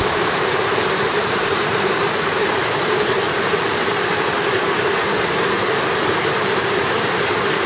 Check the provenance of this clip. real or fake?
fake